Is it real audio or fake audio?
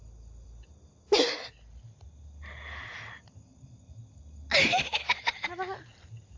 real